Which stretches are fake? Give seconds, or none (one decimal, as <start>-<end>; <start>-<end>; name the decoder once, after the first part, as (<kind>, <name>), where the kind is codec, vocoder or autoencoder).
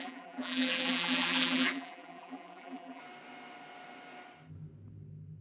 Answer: 0.0-3.0 (vocoder, BigVGAN v2)